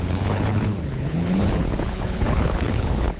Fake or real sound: fake